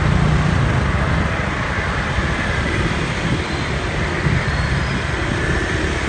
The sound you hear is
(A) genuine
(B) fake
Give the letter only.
A